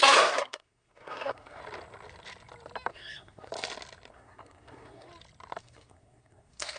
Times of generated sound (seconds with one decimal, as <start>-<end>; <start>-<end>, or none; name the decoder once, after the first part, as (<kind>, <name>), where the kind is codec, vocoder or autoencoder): 0.0-1.6 (codec, SNAC); 2.9-3.5; 4.1-5.1; 5.6-6.8